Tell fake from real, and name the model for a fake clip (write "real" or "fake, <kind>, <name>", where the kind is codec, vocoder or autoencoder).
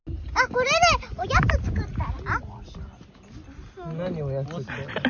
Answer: real